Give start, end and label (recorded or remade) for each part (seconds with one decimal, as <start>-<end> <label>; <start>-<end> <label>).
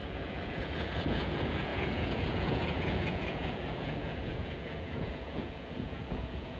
0.0-6.6 remade